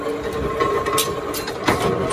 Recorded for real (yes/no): yes